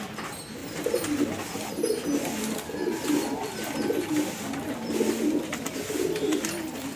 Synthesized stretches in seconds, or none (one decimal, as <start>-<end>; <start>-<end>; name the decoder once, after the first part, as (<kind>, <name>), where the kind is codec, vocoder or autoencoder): none